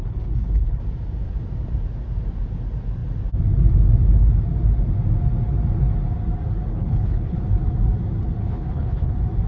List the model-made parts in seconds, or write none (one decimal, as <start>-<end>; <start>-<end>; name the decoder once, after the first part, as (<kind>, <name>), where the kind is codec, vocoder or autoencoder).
0.0-0.8 (codec, HILCodec); 6.7-7.4; 8.4-9.1